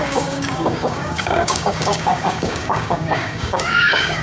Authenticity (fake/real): fake